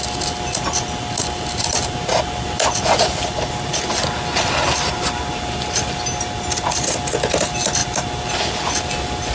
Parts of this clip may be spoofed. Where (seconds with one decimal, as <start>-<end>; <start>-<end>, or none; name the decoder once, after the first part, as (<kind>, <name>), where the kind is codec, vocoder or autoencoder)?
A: none